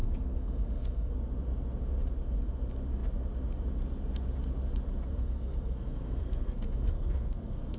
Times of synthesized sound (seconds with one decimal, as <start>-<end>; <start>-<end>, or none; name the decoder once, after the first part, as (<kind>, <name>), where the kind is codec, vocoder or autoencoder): 0.0-1.1 (codec, SNAC); 5.1-7.8